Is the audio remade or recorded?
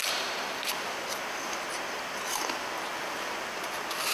recorded